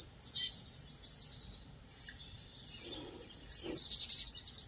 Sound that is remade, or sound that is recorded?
recorded